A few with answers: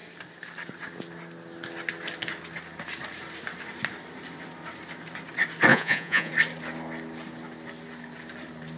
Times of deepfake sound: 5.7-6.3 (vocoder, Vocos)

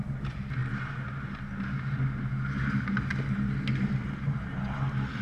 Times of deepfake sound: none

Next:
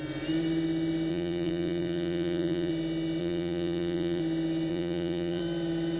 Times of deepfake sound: 1.1-2.7 (vocoder, BigVGAN v2); 3.2-4.2; 4.7-5.4

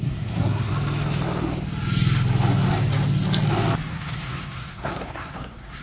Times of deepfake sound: 0.0-0.7 (codec, SNAC); 3.9-5.8